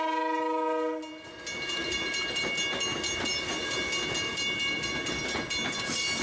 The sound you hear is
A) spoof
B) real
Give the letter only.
B